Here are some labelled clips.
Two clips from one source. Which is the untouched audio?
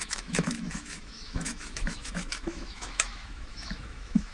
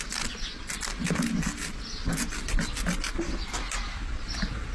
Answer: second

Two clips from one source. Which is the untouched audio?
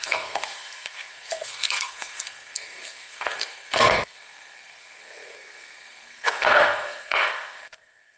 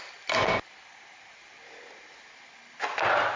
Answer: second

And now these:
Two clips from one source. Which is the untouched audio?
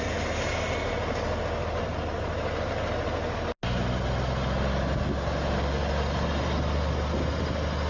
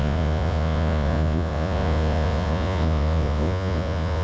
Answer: first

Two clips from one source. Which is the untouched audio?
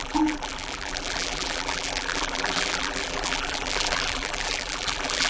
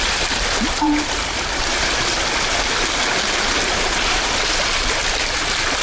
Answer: second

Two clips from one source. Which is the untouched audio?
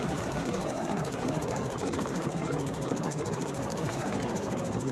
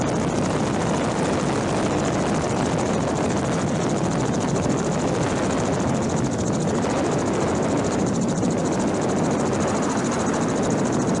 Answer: second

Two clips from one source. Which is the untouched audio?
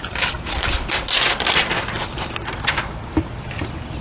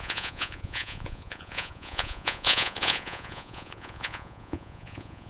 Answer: first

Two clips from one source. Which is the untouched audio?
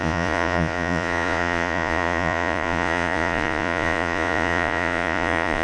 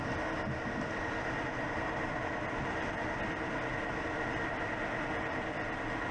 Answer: second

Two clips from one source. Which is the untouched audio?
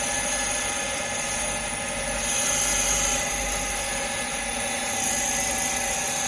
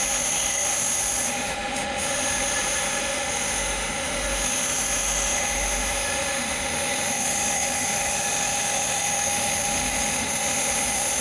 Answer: first